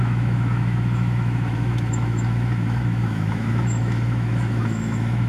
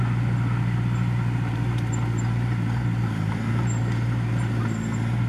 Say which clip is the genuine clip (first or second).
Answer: second